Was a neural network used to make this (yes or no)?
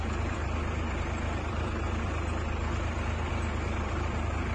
yes